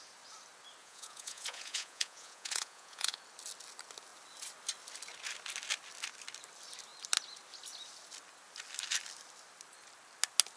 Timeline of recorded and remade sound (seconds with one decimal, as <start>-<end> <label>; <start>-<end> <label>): 0.0-0.8 recorded; 0.8-3.2 remade; 3.2-10.6 recorded